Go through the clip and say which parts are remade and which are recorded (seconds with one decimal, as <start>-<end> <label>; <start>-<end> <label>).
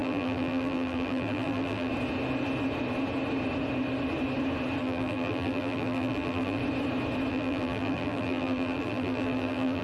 0.0-1.9 remade; 1.9-4.8 recorded; 4.8-6.6 remade; 6.6-7.3 recorded; 7.3-9.8 remade